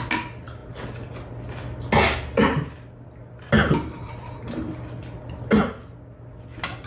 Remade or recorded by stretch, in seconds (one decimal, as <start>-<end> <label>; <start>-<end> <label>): 0.0-6.9 recorded